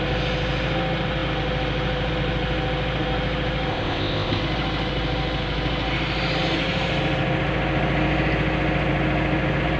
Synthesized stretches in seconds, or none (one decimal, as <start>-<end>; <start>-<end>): 3.7-4.4